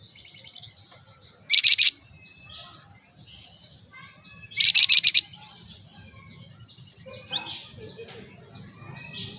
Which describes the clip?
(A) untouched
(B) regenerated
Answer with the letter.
A